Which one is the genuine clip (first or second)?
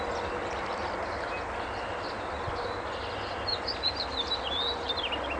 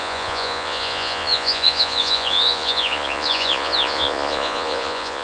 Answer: first